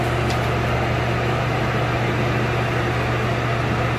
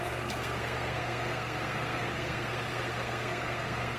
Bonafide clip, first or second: first